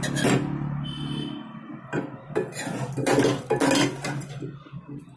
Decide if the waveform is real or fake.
real